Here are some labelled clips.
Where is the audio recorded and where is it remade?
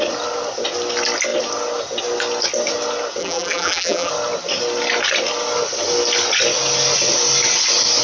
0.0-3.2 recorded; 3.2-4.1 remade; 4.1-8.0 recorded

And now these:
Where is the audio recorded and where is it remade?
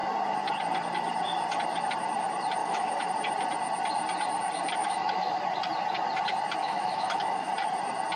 0.0-2.6 recorded; 2.6-3.1 remade; 3.1-4.8 recorded; 4.8-5.4 remade; 5.4-6.6 recorded; 6.6-7.5 remade; 7.5-8.2 recorded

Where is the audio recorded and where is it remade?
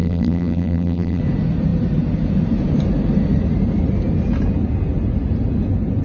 0.0-1.2 remade; 1.2-6.0 recorded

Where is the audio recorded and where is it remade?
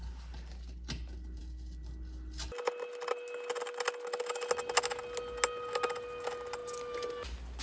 0.0-7.6 recorded